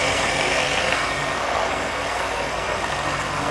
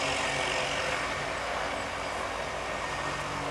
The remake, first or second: first